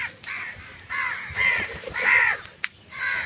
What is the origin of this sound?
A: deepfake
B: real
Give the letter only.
A